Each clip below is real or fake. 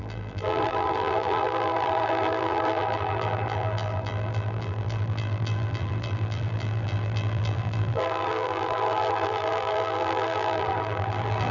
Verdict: fake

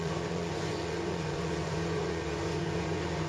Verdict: fake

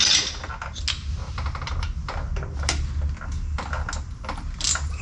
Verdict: real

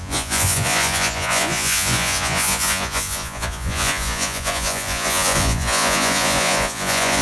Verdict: fake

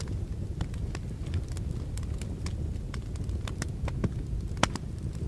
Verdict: real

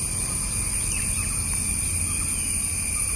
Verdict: real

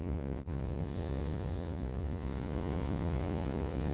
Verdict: fake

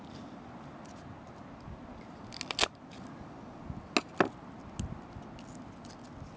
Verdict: real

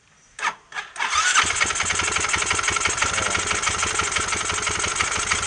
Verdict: real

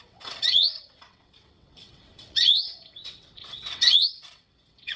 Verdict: fake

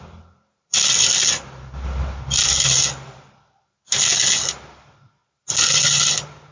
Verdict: real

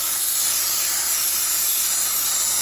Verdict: fake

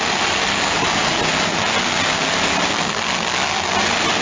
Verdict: real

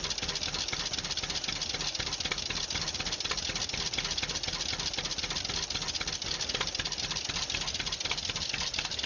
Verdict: real